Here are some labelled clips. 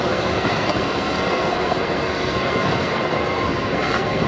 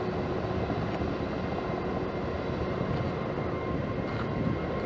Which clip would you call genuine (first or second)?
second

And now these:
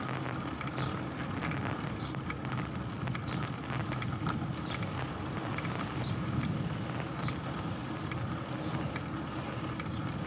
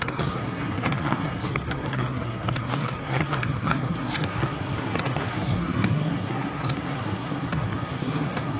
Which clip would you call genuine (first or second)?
first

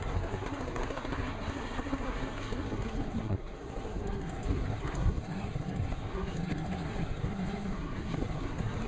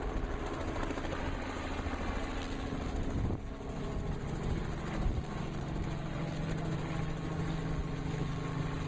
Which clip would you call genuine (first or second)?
second